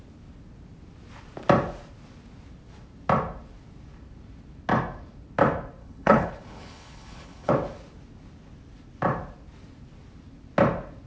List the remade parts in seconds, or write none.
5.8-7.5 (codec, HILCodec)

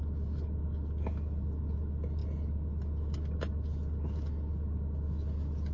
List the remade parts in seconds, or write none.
none